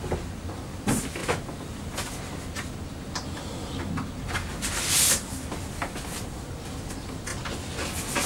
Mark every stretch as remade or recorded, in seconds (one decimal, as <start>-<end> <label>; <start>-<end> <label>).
0.0-8.3 recorded